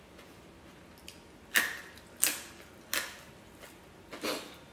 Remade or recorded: recorded